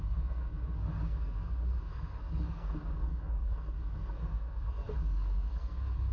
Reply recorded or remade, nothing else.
remade